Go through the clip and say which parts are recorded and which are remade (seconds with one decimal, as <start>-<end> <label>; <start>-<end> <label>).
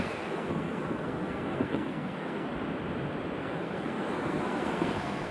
0.0-2.5 remade; 2.5-3.4 recorded; 3.4-5.3 remade